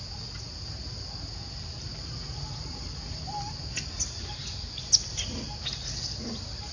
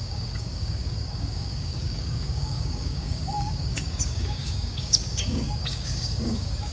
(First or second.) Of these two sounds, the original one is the first